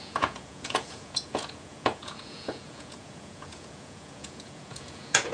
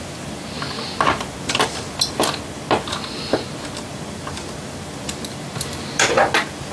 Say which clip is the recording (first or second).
second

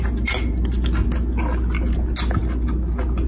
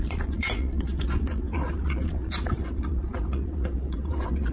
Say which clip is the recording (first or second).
first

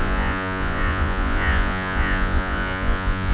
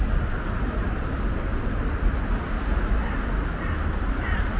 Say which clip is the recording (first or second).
second